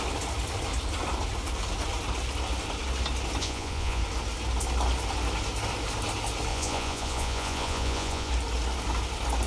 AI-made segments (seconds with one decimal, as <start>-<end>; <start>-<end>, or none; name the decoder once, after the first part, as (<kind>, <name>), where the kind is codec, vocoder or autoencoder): 3.4-4.0 (vocoder, Vocos); 6.5-8.3